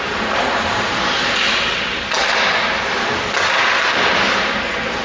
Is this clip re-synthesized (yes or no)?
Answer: no